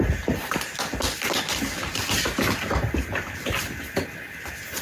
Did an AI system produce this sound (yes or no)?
no